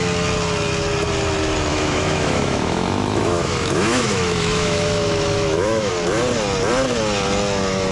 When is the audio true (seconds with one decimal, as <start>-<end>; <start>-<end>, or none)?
0.0-1.7; 5.9-7.9